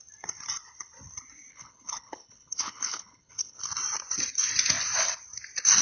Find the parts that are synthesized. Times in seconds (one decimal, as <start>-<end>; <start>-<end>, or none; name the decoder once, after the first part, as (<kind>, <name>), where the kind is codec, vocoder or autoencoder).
1.5-3.6 (codec, HILCodec)